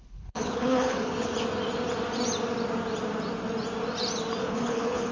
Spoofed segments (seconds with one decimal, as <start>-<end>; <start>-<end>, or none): 0.0-1.3; 4.4-5.1